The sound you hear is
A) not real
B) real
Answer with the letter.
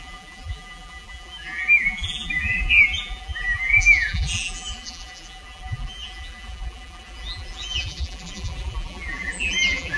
A